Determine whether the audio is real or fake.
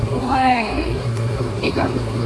fake